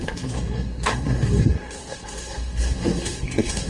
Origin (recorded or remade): remade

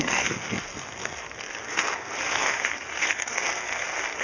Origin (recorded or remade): remade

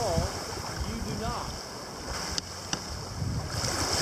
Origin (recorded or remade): recorded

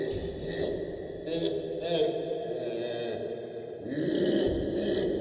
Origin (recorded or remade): recorded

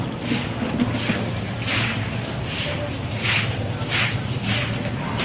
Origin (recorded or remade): recorded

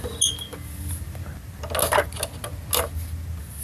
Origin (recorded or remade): recorded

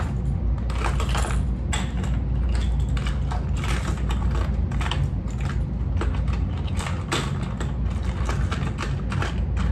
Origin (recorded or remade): recorded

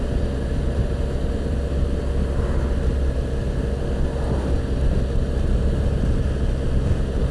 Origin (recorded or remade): recorded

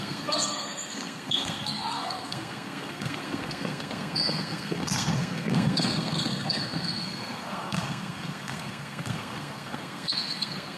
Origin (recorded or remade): remade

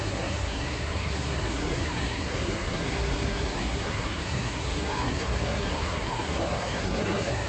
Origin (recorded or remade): remade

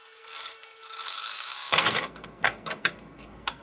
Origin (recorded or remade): remade